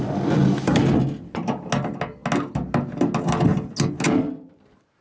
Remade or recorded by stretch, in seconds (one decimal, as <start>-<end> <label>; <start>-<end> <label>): 0.0-5.0 recorded